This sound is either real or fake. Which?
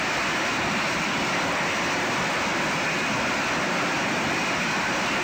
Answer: real